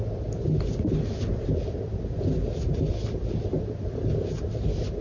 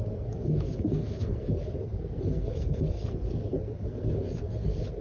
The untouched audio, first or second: first